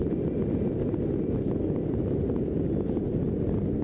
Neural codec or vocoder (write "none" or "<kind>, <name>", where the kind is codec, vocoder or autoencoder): none